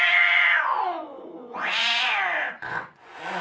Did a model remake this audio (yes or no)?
yes